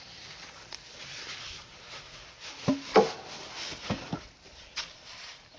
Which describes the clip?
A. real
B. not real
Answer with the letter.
A